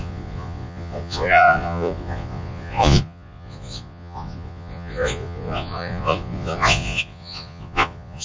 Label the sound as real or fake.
fake